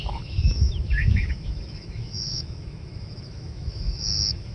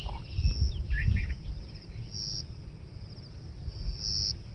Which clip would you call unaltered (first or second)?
second